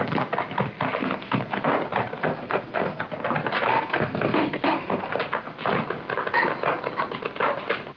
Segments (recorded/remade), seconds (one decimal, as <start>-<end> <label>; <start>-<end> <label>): 0.0-1.0 recorded; 1.0-1.7 remade; 1.7-2.2 recorded; 2.2-3.0 remade; 3.0-3.7 recorded; 3.7-5.1 remade; 5.1-8.0 recorded